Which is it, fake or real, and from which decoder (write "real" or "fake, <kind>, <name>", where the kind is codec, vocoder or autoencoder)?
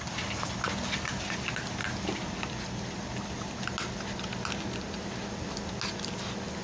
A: real